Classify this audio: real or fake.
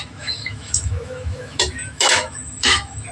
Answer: fake